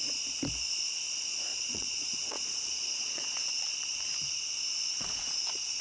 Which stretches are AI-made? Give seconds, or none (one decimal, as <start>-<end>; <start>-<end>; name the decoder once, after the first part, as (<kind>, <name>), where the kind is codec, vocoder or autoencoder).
1.5-4.1 (vocoder, Vocos); 4.9-5.8